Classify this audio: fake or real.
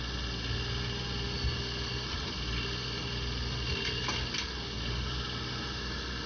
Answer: real